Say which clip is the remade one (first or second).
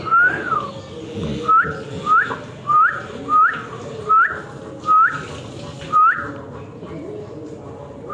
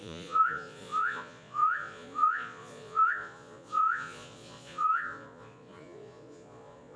second